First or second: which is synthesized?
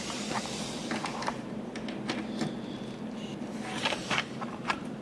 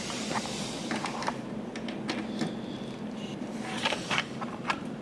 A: second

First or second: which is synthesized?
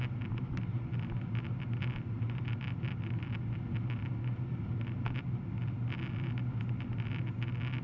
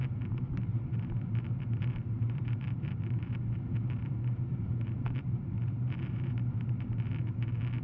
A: second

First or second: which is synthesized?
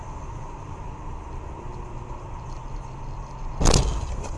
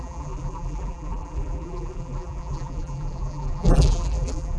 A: second